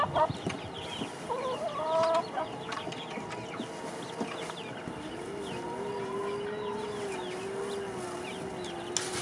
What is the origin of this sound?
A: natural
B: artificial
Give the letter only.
A